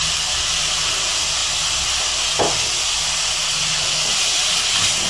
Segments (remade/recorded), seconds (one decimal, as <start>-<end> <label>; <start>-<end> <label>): 0.0-5.1 recorded